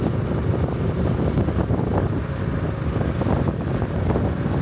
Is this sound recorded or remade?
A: recorded